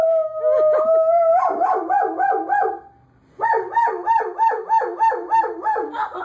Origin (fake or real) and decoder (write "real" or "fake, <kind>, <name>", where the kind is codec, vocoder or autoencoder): real